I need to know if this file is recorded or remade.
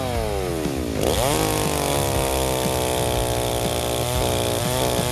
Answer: recorded